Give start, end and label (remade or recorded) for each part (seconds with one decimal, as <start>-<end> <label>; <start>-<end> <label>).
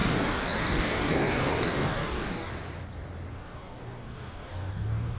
0.0-2.5 remade; 2.5-3.3 recorded; 3.3-5.2 remade